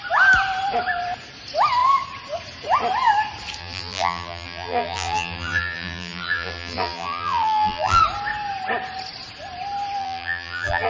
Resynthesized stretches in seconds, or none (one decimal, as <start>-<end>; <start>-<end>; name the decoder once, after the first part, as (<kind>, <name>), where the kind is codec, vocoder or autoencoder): 3.6-8.0 (vocoder, BigVGAN v2); 10.0-10.9